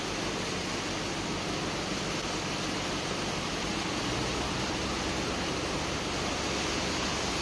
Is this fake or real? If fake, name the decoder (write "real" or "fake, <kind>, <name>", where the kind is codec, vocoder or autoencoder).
fake, vocoder, BigVGAN v2